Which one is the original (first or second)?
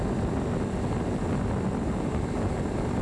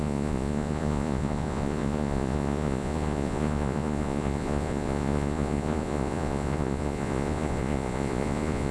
first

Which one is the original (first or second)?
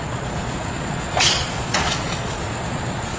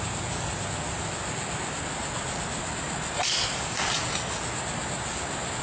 second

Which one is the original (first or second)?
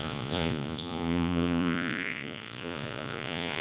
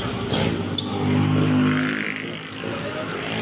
second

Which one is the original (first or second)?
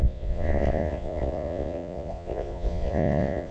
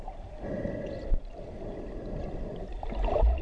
second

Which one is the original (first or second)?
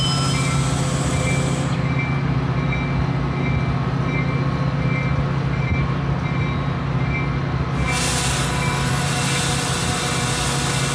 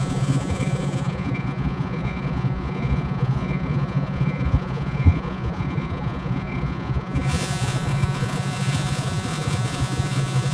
first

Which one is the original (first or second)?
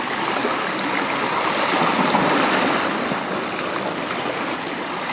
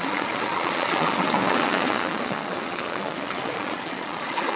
first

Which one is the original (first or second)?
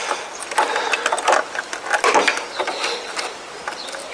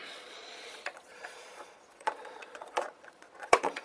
first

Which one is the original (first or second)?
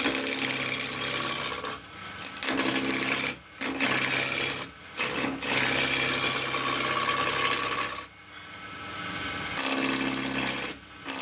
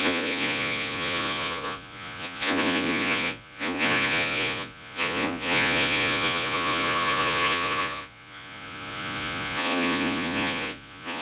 first